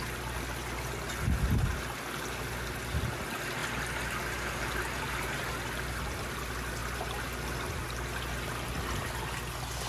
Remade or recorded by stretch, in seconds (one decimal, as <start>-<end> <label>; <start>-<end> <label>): 0.0-9.9 recorded